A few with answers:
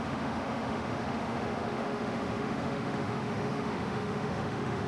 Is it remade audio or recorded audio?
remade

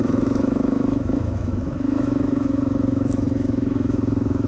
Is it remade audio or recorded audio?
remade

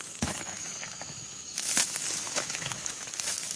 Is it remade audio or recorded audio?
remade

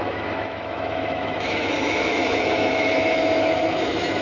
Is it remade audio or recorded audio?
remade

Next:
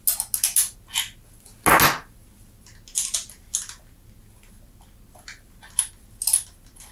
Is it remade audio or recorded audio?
recorded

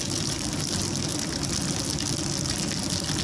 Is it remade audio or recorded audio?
recorded